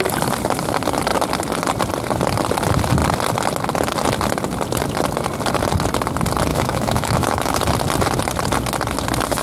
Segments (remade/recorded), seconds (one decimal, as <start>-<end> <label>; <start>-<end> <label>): 0.0-6.5 recorded; 6.5-7.6 remade; 7.6-9.4 recorded